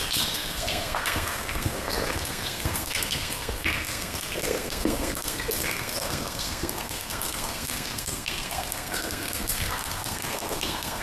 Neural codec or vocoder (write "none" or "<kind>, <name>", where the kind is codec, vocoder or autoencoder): codec, SNAC